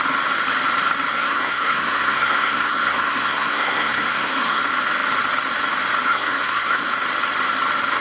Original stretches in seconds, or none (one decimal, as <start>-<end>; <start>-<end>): 0.0-1.1; 4.6-6.1; 6.9-8.0